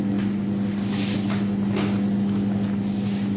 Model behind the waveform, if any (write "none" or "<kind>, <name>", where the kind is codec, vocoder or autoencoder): none